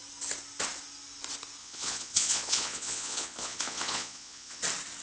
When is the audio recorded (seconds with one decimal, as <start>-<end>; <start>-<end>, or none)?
0.0-1.6; 4.6-5.0